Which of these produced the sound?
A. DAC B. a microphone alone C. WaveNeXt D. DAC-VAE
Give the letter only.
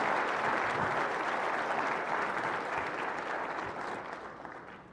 B